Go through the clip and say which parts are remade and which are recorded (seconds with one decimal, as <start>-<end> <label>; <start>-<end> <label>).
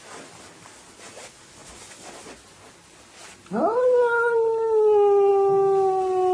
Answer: 0.0-6.3 recorded